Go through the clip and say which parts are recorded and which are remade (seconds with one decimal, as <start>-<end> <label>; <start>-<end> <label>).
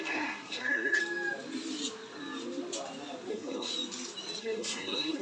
0.0-1.0 remade; 1.0-3.3 recorded; 3.3-3.7 remade; 3.7-4.4 recorded; 4.4-5.2 remade